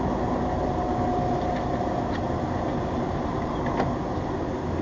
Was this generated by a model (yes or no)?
no